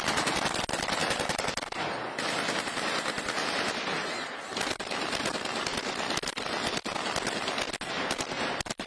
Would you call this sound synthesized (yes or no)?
no